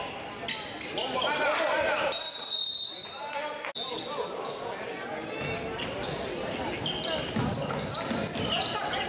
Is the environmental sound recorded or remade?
recorded